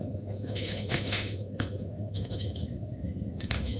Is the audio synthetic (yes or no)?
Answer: yes